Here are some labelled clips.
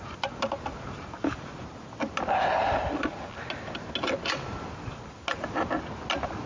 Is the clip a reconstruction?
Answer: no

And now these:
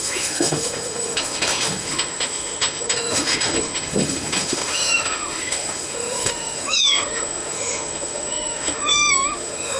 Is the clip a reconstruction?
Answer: yes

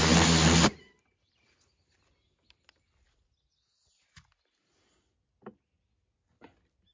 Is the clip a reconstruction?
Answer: no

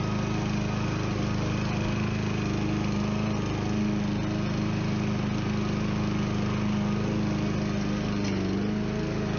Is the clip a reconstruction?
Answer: no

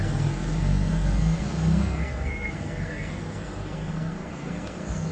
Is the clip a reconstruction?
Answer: yes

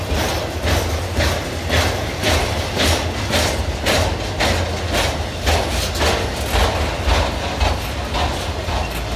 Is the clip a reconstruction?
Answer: no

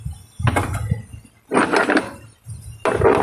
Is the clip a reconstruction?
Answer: no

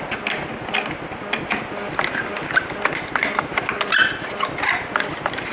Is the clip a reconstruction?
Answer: no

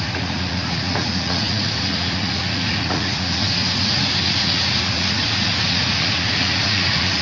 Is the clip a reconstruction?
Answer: yes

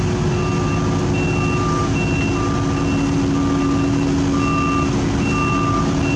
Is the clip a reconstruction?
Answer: no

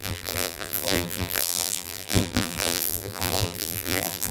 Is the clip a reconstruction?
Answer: yes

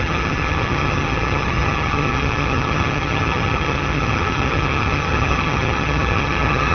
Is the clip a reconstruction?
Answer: yes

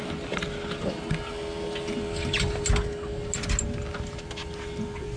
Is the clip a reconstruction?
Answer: no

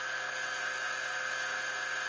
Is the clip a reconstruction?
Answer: no